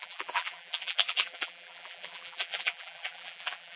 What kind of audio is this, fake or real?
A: fake